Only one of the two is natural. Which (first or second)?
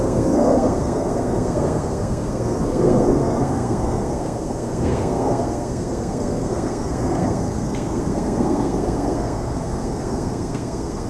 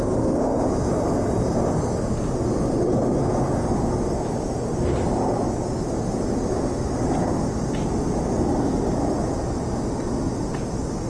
second